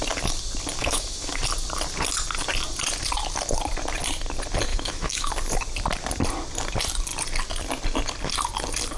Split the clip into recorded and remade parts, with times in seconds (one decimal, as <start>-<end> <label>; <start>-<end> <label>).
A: 0.0-0.8 recorded; 0.8-1.4 remade; 1.4-4.7 recorded; 4.7-5.3 remade; 5.3-9.0 recorded